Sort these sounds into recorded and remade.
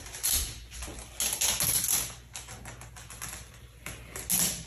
recorded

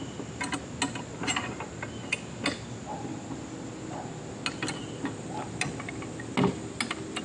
recorded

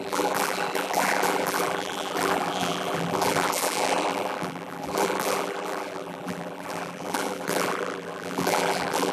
remade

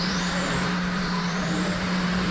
remade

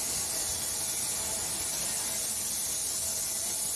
recorded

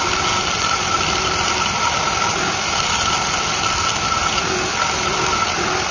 recorded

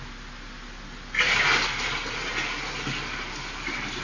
recorded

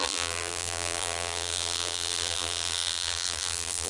remade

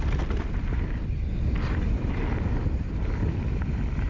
remade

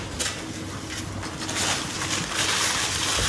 recorded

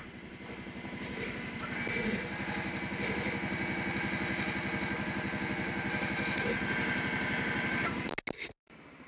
recorded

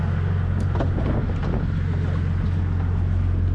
recorded